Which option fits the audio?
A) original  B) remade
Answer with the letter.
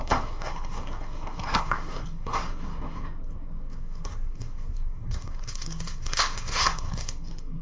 B